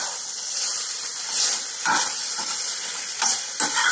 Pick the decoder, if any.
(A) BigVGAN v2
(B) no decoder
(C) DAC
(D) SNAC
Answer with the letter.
A